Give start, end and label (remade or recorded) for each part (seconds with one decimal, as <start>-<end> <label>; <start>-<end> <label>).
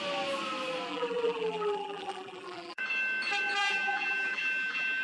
0.0-0.9 recorded; 0.9-2.8 remade; 2.8-3.6 recorded; 3.6-5.0 remade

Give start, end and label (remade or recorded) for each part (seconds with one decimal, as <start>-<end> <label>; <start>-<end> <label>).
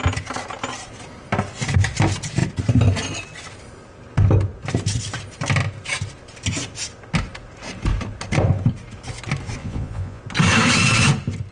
0.0-9.6 recorded; 9.6-10.2 remade; 10.2-11.5 recorded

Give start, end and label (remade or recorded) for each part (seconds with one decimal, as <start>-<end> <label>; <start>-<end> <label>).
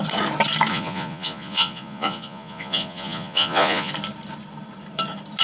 0.0-0.7 recorded; 0.7-3.9 remade; 3.9-5.4 recorded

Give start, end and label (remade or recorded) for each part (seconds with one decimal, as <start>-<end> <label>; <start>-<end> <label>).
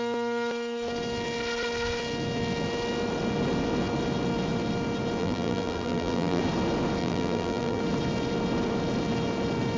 0.0-5.2 recorded; 5.2-6.4 remade; 6.4-7.0 recorded; 7.0-7.8 remade; 7.8-9.8 recorded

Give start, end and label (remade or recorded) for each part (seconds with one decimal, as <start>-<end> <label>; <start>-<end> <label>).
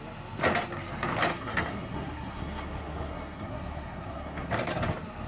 0.0-1.3 recorded; 1.3-4.5 remade; 4.5-5.3 recorded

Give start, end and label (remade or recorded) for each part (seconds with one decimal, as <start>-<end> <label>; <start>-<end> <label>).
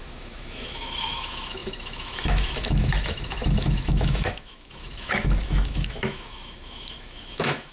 0.0-7.7 remade